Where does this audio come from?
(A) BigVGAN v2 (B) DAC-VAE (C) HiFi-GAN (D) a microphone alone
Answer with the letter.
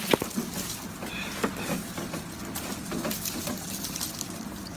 D